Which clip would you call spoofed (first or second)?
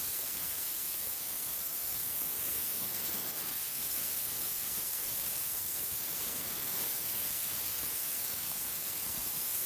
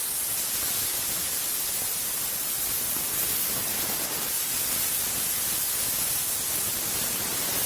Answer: first